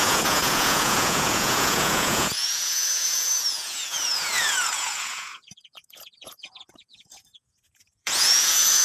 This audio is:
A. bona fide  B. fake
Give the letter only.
B